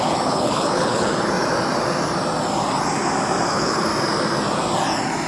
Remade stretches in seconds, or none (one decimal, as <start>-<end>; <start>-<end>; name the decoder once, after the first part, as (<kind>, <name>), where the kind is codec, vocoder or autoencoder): 0.0-1.1 (codec, HILCodec); 3.5-3.9